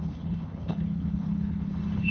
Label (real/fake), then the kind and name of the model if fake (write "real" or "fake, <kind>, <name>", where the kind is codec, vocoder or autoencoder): fake, codec, HILCodec